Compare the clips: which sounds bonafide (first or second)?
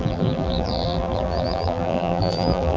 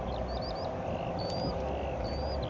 second